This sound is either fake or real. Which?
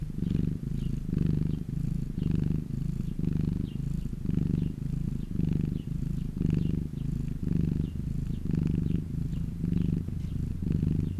real